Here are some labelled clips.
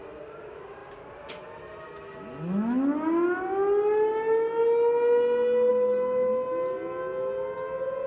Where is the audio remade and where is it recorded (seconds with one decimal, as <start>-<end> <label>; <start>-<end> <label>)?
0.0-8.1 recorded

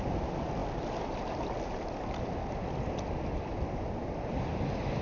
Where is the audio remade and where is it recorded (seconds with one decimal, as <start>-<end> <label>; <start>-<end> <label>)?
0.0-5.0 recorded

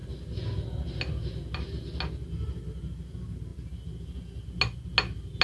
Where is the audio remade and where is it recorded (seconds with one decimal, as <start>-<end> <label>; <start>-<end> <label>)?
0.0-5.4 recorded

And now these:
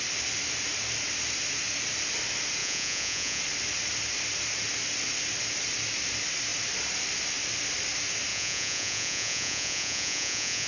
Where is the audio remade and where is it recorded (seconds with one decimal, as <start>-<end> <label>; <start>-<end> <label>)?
0.0-2.6 recorded; 2.6-3.4 remade; 3.4-8.3 recorded; 8.3-10.7 remade